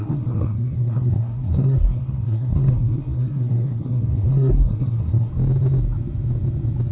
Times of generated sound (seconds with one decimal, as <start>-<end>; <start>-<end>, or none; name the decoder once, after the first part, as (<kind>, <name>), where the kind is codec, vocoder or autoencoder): 0.0-5.3 (codec, SNAC)